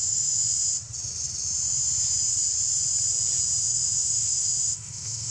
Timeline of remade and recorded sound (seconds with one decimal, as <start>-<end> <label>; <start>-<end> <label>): 0.0-0.4 remade; 0.4-3.6 recorded; 3.6-5.3 remade